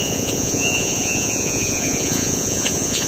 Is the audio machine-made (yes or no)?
yes